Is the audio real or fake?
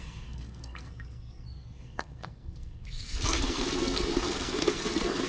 fake